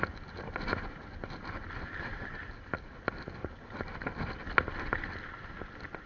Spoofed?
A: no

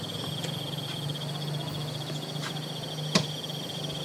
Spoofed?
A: no